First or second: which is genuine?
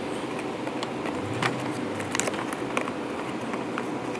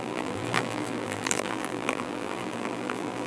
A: first